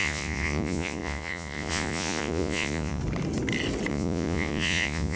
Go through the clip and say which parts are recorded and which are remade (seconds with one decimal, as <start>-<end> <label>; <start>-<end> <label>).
0.0-3.0 remade; 3.0-3.9 recorded; 3.9-5.2 remade